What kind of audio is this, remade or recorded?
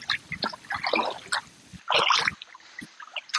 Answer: recorded